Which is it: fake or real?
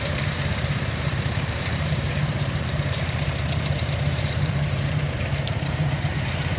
fake